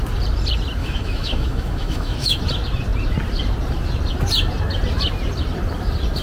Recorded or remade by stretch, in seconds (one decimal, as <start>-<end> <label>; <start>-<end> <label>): 0.0-0.8 recorded; 0.8-2.4 remade; 2.4-6.2 recorded

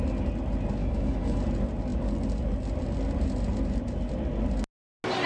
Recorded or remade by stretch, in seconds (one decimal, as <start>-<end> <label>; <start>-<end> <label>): 0.0-0.8 recorded; 0.8-1.4 remade; 1.4-5.3 recorded

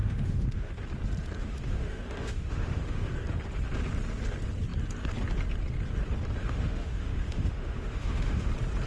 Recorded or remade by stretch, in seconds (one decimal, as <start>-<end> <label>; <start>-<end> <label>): 0.0-0.7 remade; 0.7-1.4 recorded; 1.4-3.1 remade; 3.1-6.4 recorded; 6.4-8.5 remade; 8.5-8.9 recorded

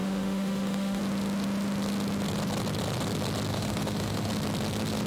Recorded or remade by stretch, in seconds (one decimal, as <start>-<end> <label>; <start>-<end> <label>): 0.0-1.0 remade; 1.0-3.5 recorded; 3.5-4.3 remade; 4.3-5.1 recorded

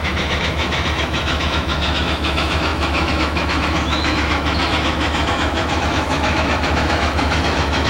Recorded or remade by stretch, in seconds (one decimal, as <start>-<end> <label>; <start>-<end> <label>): 0.0-7.9 remade